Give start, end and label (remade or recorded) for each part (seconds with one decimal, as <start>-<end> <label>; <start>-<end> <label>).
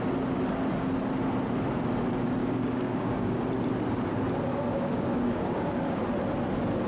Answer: 0.0-2.4 recorded; 2.4-3.4 remade; 3.4-4.5 recorded; 4.5-6.0 remade; 6.0-6.9 recorded